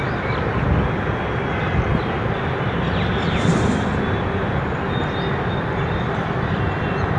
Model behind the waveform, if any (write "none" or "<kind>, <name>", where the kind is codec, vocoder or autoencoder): none